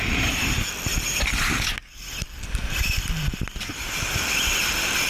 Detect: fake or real real